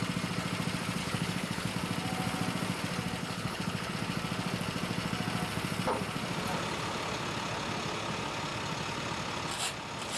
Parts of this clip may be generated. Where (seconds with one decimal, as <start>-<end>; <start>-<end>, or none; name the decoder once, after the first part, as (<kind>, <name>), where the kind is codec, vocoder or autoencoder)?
1.0-1.7 (codec, HILCodec); 3.2-3.9